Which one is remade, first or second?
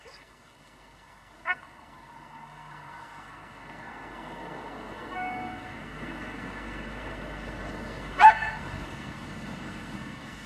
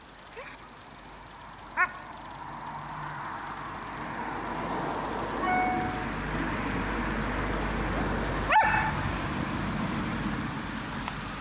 first